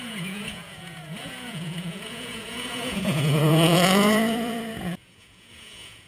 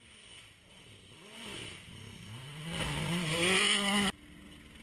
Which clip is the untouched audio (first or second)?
second